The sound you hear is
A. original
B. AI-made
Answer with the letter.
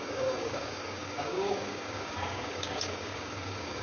B